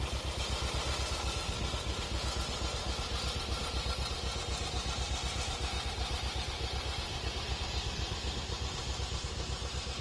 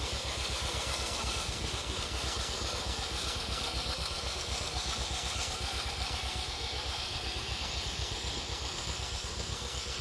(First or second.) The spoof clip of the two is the second